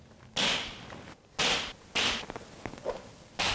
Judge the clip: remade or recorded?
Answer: recorded